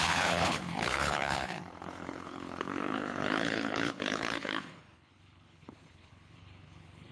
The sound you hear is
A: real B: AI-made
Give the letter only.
B